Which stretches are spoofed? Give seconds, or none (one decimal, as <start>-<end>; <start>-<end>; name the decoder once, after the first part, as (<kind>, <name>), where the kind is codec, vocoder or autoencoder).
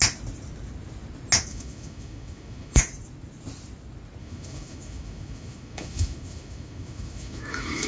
1.5-2.8 (autoencoder, DAC-VAE); 4.2-7.9